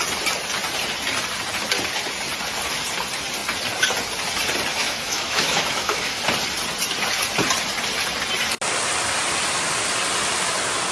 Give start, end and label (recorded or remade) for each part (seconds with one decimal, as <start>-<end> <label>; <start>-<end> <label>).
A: 0.0-4.7 recorded; 4.7-6.2 remade; 6.2-10.9 recorded